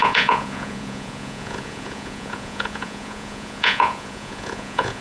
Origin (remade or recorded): remade